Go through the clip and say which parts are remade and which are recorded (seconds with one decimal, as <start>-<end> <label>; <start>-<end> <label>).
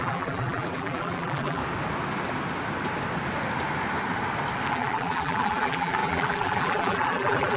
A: 0.0-1.6 remade; 1.6-4.7 recorded; 4.7-7.6 remade